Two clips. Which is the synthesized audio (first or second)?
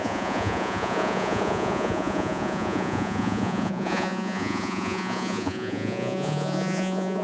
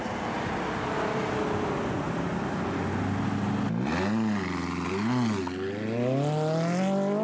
first